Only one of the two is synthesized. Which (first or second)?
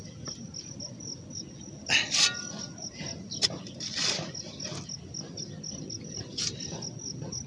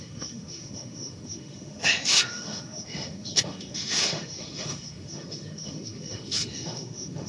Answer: second